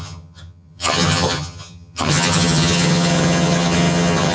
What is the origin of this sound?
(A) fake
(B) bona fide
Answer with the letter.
A